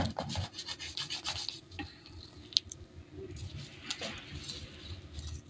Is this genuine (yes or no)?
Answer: yes